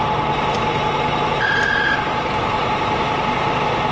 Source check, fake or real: real